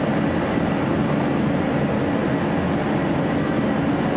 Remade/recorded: recorded